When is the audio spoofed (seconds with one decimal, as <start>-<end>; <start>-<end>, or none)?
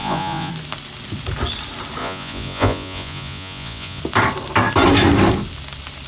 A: 0.0-0.5; 2.0-4.0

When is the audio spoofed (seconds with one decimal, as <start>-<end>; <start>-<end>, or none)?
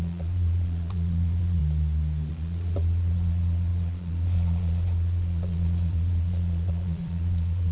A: 0.0-1.6; 2.3-7.7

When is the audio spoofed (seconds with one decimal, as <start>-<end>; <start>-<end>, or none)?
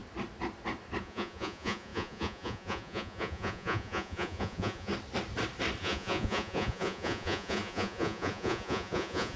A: 1.0-4.9; 5.8-9.4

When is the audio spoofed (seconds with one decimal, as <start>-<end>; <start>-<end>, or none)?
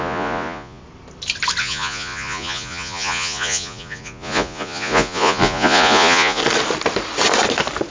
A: 0.0-0.8; 1.6-6.4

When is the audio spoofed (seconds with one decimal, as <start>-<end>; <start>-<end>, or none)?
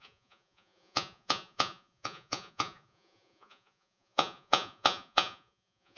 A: 0.0-6.0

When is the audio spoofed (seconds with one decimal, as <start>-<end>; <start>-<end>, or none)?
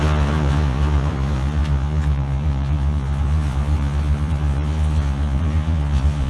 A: 0.0-6.3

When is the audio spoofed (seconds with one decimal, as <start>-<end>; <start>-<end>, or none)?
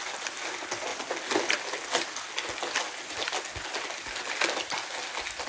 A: none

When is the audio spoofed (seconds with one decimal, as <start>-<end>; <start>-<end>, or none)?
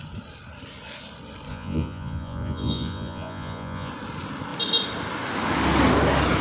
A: 1.5-3.9